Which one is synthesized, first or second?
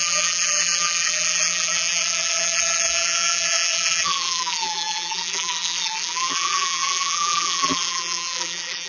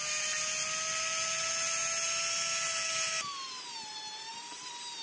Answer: first